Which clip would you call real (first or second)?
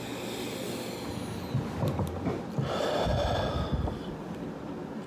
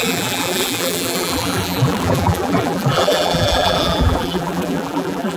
first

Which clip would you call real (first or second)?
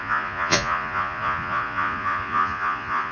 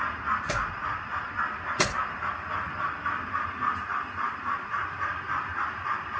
second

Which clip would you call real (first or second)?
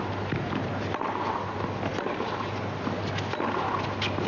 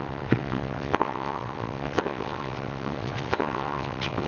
first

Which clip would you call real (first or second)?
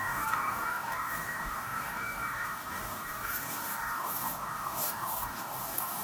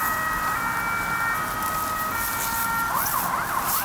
second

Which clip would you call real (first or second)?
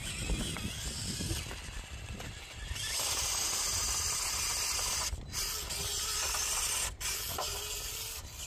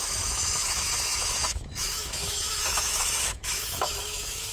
first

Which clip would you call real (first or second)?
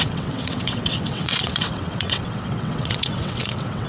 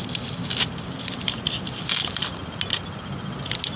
second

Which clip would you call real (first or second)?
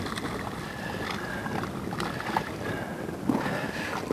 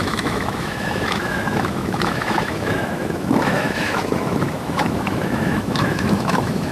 first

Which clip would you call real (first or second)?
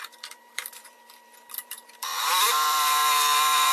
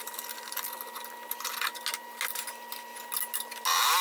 second